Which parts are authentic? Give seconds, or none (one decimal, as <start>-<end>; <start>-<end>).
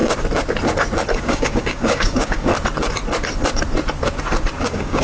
0.0-1.2; 2.5-4.6